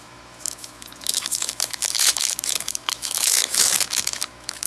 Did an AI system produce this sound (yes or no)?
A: yes